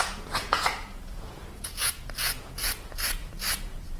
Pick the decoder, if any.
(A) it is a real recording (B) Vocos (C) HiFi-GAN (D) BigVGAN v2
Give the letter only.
B